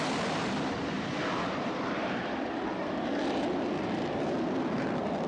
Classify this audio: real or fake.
fake